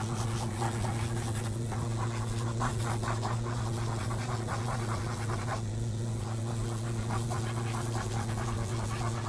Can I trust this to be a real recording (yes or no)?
no